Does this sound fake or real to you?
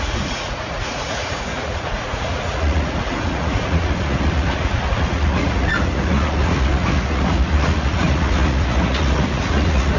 fake